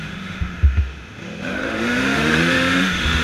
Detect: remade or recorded remade